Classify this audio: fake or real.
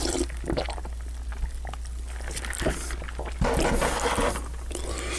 real